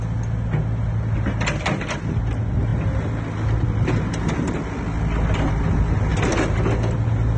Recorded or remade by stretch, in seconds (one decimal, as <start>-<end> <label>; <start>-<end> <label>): 0.0-7.4 recorded